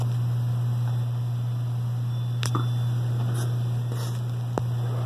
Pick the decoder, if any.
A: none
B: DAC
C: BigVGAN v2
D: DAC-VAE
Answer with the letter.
A